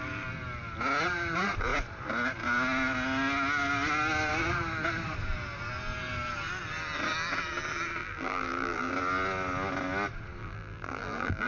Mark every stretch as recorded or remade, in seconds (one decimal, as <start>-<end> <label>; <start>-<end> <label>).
0.0-8.0 recorded; 8.0-8.9 remade; 8.9-10.4 recorded; 10.4-11.5 remade